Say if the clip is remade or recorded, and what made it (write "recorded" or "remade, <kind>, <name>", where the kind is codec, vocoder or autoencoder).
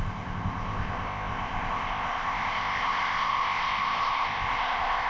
remade, codec, ZipCodec